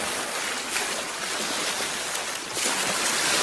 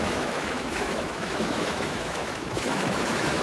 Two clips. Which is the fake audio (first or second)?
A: second